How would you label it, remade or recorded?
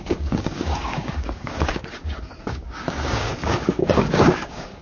remade